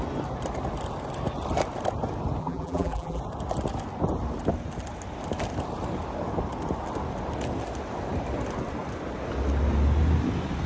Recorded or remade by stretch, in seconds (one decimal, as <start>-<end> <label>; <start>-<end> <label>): 0.0-2.4 recorded; 2.4-3.2 remade; 3.2-10.7 recorded